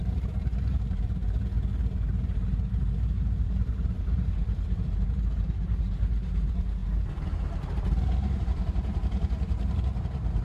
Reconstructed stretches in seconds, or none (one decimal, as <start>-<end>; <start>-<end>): 0.0-1.2; 2.1-6.8; 7.7-10.4